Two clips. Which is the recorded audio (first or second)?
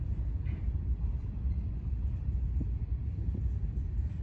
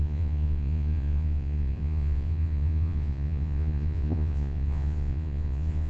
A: first